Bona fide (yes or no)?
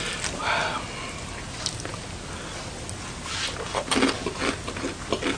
yes